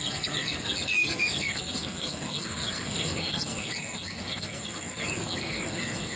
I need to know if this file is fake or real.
fake